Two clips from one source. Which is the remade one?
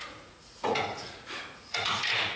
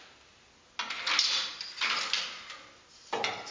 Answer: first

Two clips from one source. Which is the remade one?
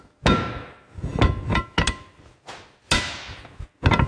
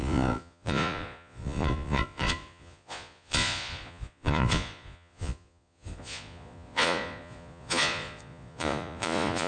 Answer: second